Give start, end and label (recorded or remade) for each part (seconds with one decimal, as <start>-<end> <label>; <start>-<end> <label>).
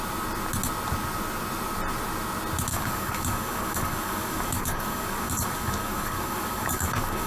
0.0-2.7 recorded; 2.7-7.3 remade